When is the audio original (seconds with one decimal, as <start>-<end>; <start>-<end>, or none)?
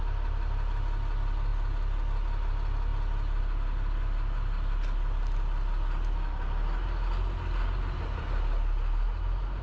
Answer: 0.0-9.6